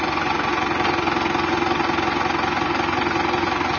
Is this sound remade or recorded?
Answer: recorded